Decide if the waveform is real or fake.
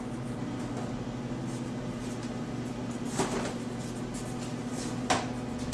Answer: real